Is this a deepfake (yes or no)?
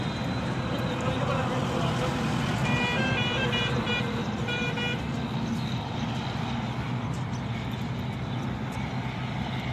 no